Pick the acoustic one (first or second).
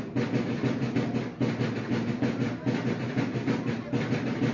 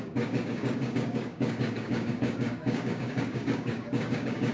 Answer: first